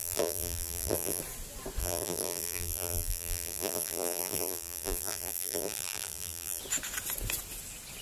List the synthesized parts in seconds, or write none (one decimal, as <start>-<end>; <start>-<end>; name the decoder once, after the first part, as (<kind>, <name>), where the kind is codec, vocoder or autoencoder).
0.0-1.2 (vocoder, BigVGAN v2); 1.8-6.6